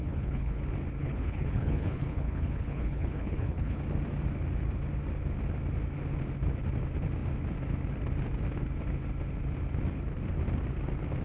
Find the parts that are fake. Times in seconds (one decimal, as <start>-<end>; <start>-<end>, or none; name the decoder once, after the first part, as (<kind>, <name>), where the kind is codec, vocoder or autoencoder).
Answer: 0.0-0.6 (codec, HILCodec); 1.0-3.8